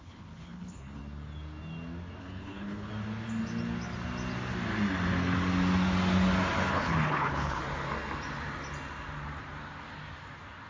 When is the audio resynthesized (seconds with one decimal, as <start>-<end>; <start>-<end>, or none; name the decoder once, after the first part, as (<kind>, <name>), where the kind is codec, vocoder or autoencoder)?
0.0-1.0 (codec, HILCodec); 2.2-2.9; 6.7-7.6